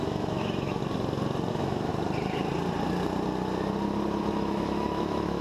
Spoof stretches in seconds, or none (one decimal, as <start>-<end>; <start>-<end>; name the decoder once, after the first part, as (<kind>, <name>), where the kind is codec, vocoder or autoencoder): 0.0-0.8 (autoencoder, DAC-VAE); 1.5-1.9; 4.3-5.4